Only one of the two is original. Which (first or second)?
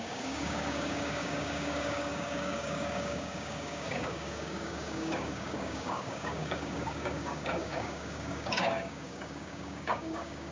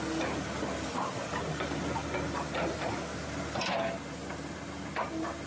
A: second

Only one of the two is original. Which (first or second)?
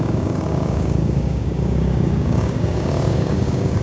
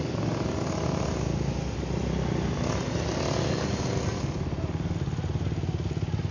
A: second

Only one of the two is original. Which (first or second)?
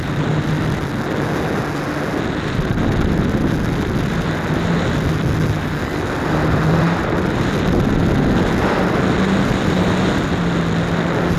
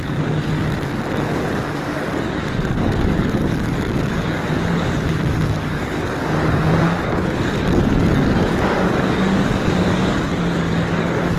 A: first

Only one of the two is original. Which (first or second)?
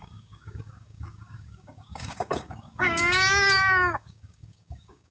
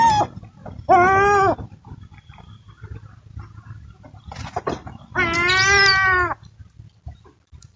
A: second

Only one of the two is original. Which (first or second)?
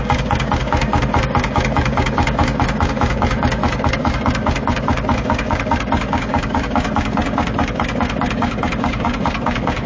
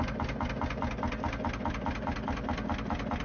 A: second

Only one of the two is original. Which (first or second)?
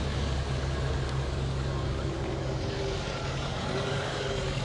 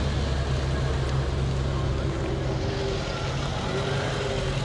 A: second